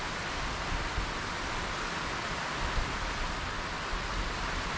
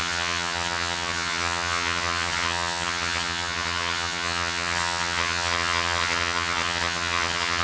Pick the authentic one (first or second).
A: first